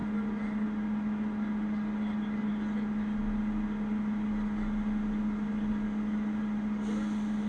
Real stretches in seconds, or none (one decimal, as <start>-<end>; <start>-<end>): 0.0-7.5